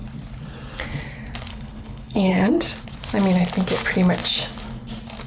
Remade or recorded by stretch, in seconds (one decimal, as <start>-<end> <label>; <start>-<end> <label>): 0.0-1.5 recorded; 1.5-2.5 remade; 2.5-5.3 recorded